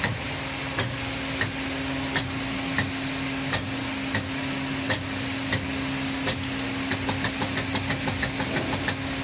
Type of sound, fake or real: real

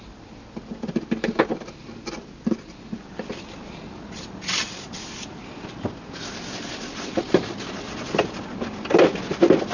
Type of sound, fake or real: real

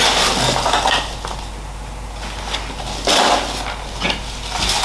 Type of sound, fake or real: real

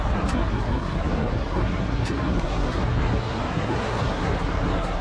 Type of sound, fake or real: fake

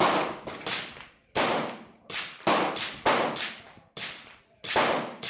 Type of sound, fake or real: real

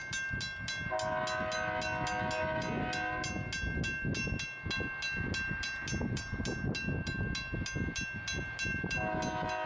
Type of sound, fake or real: real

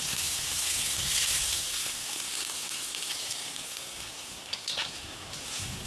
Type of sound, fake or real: fake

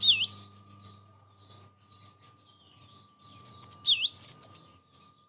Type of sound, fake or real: real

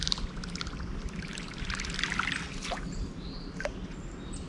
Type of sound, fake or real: real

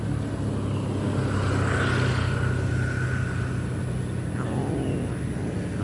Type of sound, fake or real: real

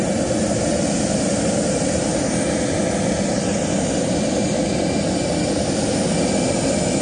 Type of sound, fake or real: real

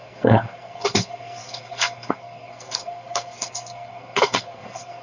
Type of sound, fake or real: fake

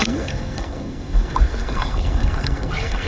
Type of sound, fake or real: fake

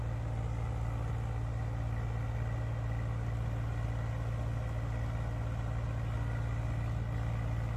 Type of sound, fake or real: real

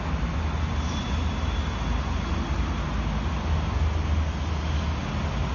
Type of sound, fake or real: real